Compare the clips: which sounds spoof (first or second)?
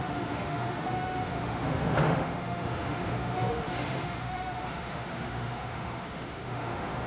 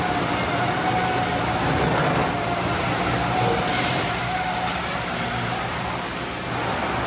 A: first